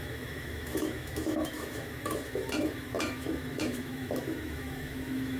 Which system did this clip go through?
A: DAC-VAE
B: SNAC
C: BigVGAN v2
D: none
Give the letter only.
A